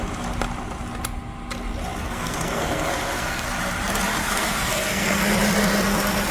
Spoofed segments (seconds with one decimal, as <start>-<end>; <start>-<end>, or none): 2.0-3.5; 4.2-5.2